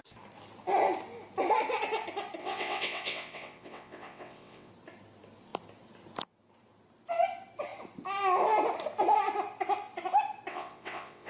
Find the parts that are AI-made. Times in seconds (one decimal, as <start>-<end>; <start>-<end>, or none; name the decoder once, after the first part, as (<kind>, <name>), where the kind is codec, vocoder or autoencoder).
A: 2.4-4.7 (vocoder, WaveNeXt); 10.5-11.3